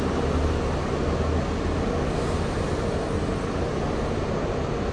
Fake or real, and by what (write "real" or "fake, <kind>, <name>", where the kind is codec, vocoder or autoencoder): real